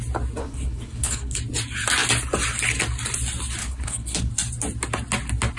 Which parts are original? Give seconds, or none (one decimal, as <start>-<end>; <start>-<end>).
0.0-0.4; 1.4-3.6; 4.3-5.6